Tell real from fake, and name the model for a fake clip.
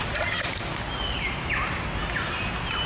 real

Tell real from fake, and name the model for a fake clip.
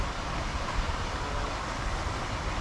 real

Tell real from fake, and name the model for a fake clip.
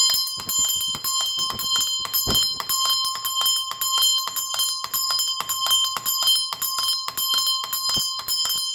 real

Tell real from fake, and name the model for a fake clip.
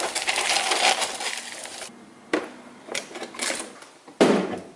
real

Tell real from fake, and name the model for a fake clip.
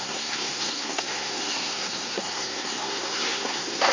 fake, codec, SNAC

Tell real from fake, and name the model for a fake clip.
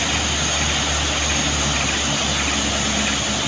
real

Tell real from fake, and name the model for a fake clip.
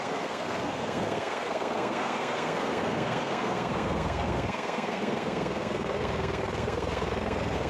fake, codec, SNAC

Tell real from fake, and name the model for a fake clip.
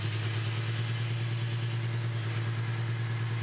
real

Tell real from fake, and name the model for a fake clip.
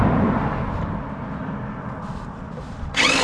real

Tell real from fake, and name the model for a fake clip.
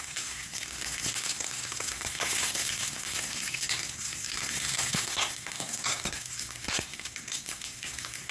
fake, codec, SNAC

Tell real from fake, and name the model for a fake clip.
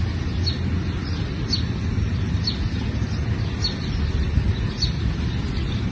real